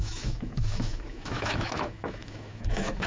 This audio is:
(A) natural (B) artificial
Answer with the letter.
B